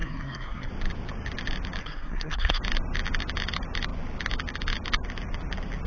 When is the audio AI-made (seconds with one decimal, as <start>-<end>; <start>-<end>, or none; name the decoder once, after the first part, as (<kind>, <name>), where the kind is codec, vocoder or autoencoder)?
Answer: 0.0-0.7 (codec, SNAC); 1.8-2.6